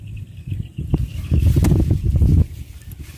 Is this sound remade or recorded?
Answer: recorded